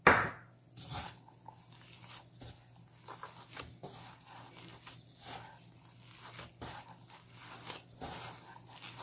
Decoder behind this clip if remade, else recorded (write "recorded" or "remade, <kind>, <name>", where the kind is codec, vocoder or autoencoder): recorded